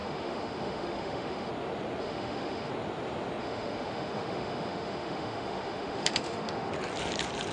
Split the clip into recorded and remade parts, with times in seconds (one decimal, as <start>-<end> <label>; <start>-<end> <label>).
0.0-1.5 remade; 1.5-2.0 recorded; 2.0-2.7 remade; 2.7-3.4 recorded; 3.4-6.7 remade; 6.7-7.5 recorded